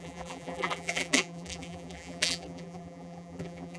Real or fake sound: fake